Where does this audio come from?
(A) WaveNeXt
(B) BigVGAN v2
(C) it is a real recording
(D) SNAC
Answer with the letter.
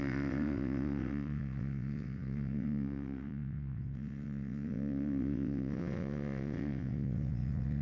A